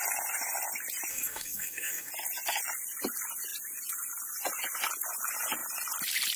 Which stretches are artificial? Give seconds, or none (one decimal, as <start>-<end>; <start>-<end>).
1.1-2.1